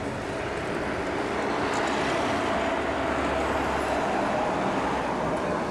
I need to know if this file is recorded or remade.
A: recorded